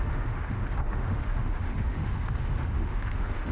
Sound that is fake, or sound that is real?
fake